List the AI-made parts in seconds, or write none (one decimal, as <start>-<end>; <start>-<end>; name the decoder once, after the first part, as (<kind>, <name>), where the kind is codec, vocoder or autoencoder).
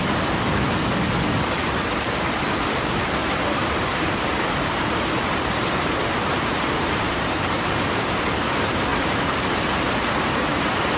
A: 3.2-8.2 (vocoder, BigVGAN v2); 8.9-9.4